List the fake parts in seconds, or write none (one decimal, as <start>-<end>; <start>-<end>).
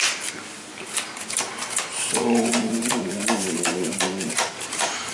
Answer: 1.9-5.1